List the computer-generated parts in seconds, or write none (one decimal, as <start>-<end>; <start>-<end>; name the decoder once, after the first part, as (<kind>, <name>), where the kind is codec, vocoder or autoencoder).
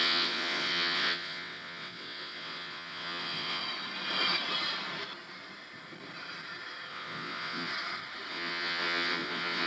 0.0-3.6 (vocoder, WaveNeXt); 6.9-7.7; 8.3-9.7